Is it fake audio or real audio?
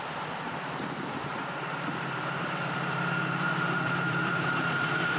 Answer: fake